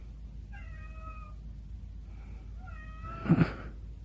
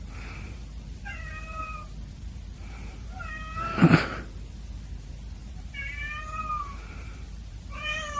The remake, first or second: second